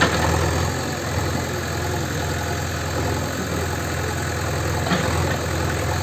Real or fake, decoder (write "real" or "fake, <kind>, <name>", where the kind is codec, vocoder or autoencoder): real